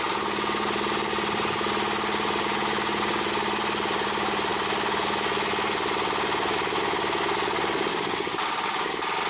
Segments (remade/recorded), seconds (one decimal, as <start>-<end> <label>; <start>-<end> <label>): 0.0-7.9 recorded; 7.9-8.9 remade; 8.9-9.3 recorded